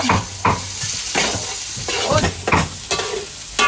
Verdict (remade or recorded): recorded